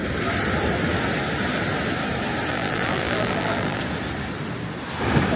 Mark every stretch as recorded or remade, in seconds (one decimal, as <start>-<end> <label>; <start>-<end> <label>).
0.0-2.5 recorded; 2.5-3.8 remade; 3.8-5.3 recorded